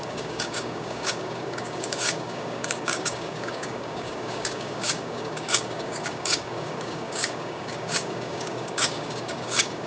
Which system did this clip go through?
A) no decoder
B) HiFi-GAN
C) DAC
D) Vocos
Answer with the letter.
C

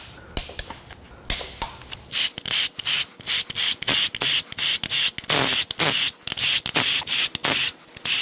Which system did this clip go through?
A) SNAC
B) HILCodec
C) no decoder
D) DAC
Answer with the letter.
C